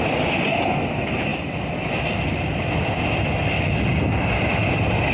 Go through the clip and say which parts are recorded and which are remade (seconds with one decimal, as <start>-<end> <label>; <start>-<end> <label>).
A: 0.0-1.3 recorded; 1.3-1.9 remade; 1.9-5.1 recorded